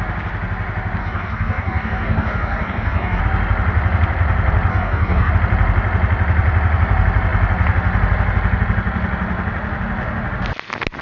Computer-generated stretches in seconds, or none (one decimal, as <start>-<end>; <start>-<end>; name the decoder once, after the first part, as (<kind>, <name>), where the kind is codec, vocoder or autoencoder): 1.0-3.2 (codec, DAC); 4.7-5.3